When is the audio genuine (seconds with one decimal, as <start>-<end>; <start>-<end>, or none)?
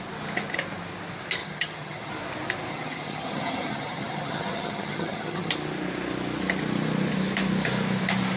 0.0-1.4; 2.1-2.7; 5.5-8.4